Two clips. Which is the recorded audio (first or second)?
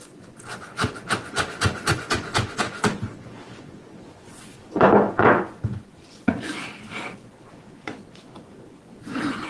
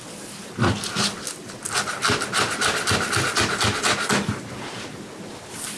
second